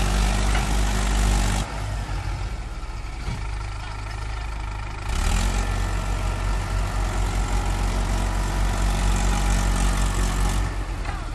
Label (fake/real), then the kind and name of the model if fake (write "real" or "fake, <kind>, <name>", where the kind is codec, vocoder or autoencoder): real